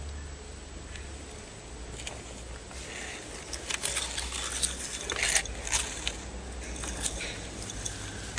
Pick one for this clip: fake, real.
real